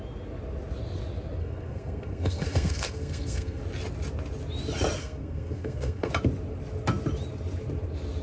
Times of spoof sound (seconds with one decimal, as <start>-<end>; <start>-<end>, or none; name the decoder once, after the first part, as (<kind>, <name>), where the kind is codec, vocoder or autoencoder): 1.4-3.6 (codec, SNAC); 5.0-6.1